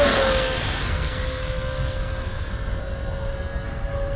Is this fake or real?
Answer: fake